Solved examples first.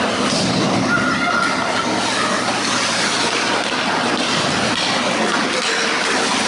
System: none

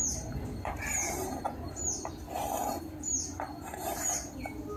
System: vocoder, BigVGAN v2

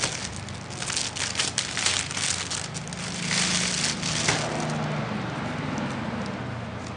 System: none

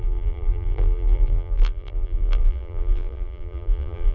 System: vocoder, BigVGAN v2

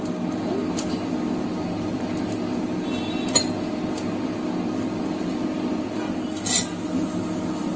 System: none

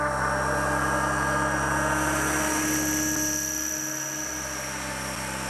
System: none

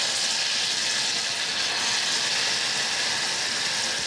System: none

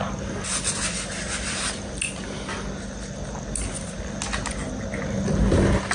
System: none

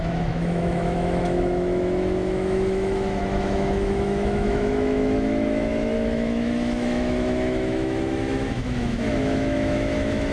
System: autoencoder, DAC-VAE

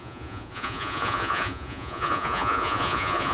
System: vocoder, Vocos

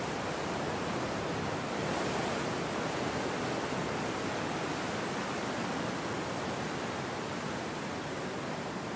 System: none